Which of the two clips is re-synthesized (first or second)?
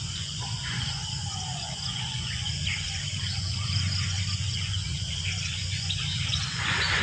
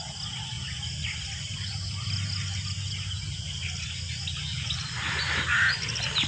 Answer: first